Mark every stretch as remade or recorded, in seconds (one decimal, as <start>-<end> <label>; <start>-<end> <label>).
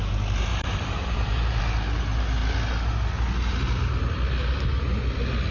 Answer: 0.0-0.5 recorded; 0.5-1.6 remade; 1.6-5.5 recorded